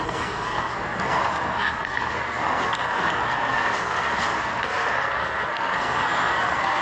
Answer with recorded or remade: remade